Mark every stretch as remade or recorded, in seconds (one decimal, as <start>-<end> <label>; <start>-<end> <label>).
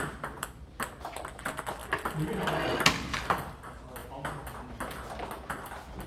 0.0-6.1 recorded